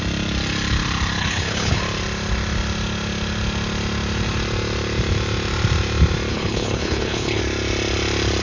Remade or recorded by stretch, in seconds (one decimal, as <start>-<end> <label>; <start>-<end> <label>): 0.0-1.2 recorded; 1.2-1.8 remade; 1.8-6.3 recorded; 6.3-7.4 remade; 7.4-8.4 recorded